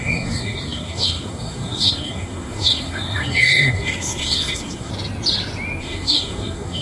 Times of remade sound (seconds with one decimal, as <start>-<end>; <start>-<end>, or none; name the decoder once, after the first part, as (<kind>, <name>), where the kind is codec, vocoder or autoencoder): 0.0-4.9 (codec, SNAC); 5.8-6.8